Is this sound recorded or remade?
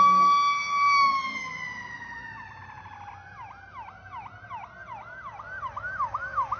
recorded